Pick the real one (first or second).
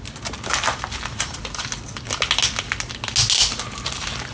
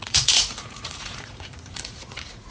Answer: first